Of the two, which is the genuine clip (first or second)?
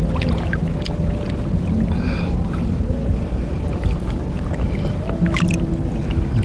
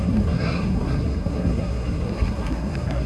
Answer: first